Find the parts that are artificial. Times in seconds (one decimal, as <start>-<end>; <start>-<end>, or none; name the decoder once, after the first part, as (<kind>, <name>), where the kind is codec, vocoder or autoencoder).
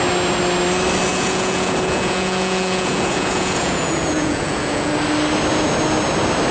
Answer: 1.1-4.9 (vocoder, Vocos)